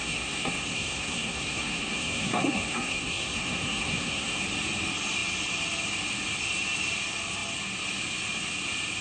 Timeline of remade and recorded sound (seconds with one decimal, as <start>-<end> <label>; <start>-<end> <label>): 0.0-4.4 remade; 4.4-9.0 recorded